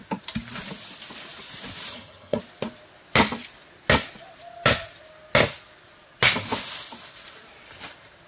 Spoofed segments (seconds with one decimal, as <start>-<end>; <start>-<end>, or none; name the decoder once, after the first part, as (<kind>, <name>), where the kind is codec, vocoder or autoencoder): 1.9-2.4 (vocoder, HiFi-GAN)